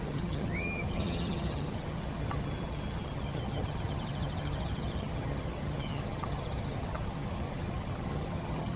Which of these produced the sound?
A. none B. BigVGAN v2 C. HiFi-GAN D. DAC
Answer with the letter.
C